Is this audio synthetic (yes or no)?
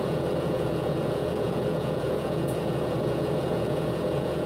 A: yes